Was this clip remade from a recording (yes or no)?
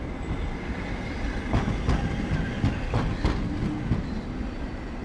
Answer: no